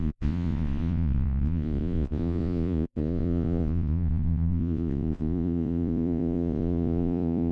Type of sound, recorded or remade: remade